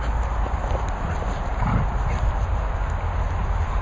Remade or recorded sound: recorded